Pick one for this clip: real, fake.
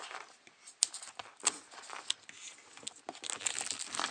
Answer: real